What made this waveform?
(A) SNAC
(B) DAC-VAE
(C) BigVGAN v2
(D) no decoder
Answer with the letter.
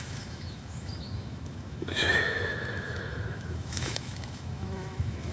B